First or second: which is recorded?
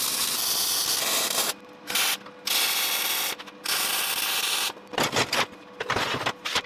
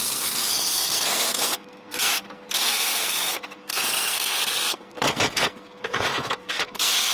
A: first